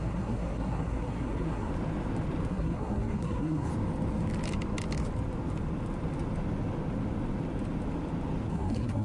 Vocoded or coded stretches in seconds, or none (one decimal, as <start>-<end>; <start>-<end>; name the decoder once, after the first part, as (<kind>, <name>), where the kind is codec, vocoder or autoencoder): 0.0-1.7 (codec, SNAC); 2.5-3.7; 8.5-9.0

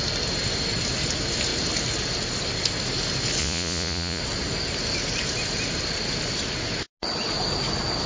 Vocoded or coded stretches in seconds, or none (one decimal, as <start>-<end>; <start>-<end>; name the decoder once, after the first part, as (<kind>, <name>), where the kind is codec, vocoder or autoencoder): 3.4-4.2 (vocoder, Vocos)